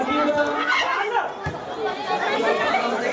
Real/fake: real